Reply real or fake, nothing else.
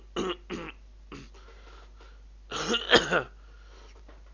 real